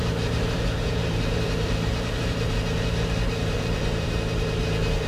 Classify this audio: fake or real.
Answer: fake